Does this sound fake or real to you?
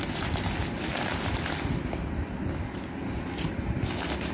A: real